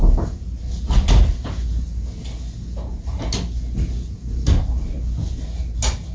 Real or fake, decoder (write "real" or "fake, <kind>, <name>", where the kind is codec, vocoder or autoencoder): real